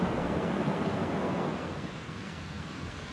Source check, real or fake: fake